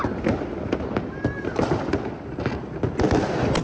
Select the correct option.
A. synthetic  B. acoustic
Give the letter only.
B